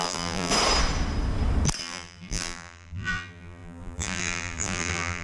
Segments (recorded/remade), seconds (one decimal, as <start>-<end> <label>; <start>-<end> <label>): 0.0-0.5 remade; 0.5-1.8 recorded; 1.8-5.2 remade